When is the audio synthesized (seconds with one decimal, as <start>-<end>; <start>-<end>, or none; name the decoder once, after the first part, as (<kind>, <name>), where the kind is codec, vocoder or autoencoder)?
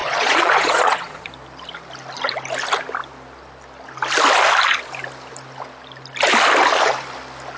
0.0-1.3 (vocoder, Vocos)